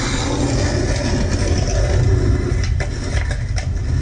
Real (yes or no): yes